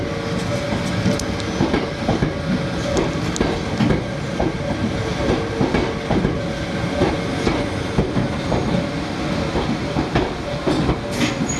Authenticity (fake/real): real